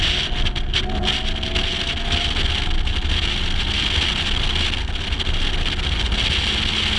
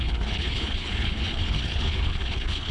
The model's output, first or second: second